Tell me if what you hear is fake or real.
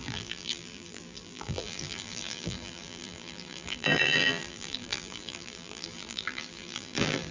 fake